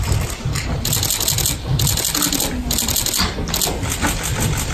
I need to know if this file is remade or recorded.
recorded